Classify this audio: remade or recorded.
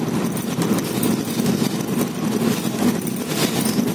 recorded